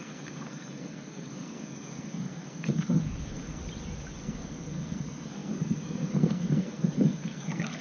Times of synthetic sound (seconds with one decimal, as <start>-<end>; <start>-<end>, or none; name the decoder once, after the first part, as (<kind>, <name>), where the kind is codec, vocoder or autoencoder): 0.0-3.6 (codec, SNAC); 4.2-7.8